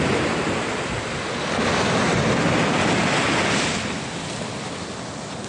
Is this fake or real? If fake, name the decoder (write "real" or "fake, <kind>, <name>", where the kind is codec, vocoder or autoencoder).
real